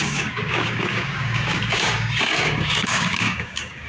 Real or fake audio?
fake